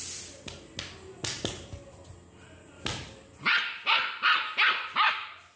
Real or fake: real